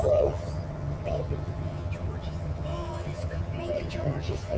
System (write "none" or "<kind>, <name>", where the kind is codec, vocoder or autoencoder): vocoder, HiFi-GAN